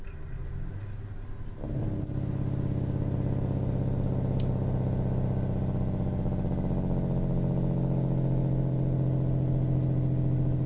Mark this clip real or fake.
real